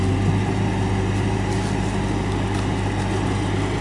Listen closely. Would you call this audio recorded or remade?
recorded